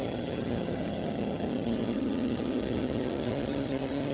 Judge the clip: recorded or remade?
remade